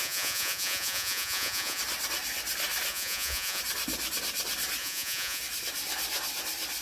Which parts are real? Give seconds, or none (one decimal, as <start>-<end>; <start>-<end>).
1.8-2.9; 3.6-4.8; 5.4-6.8